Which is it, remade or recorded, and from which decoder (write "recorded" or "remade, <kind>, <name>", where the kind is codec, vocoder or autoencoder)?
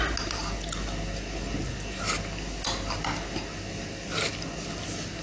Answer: recorded